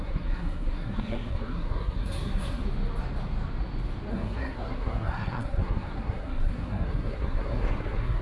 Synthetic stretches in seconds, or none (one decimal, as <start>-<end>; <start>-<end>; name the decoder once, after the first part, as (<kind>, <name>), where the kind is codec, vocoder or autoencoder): 0.0-2.6 (codec, SNAC); 4.1-8.2